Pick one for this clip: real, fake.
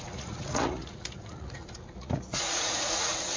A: fake